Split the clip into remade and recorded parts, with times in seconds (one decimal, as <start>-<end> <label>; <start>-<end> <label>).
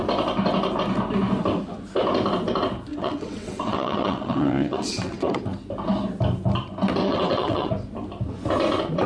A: 0.0-2.9 recorded; 2.9-5.4 remade; 5.4-7.0 recorded; 7.0-7.7 remade; 7.7-9.1 recorded